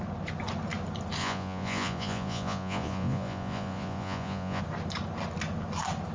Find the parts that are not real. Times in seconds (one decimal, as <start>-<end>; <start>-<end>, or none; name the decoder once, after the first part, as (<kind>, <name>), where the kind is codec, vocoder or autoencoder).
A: 1.2-4.6 (vocoder, Vocos)